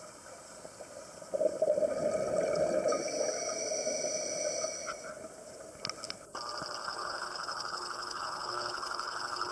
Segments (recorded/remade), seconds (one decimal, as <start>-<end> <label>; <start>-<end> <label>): 0.0-6.8 recorded; 6.8-9.5 remade